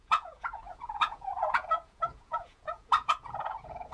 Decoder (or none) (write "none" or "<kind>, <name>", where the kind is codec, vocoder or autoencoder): vocoder, Vocos